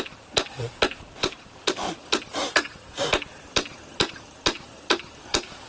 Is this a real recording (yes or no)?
yes